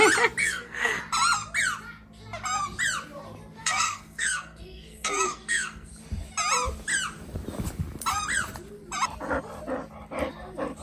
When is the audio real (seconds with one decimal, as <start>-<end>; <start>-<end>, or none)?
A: 0.0-0.4; 1.0-3.6; 5.9-10.8